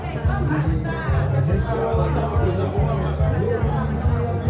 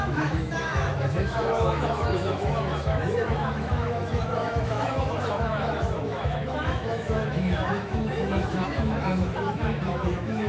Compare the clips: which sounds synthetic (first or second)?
second